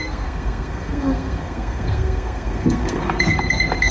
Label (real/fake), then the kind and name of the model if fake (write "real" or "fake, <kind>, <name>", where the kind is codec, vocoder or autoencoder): fake, codec, SNAC